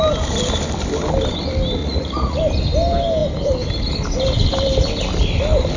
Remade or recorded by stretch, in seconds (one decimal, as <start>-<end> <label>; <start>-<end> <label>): 0.0-1.8 recorded; 1.8-2.4 remade; 2.4-5.8 recorded